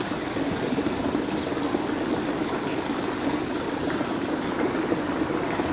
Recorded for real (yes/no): yes